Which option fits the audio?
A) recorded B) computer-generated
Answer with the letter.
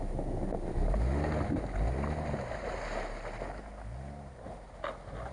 A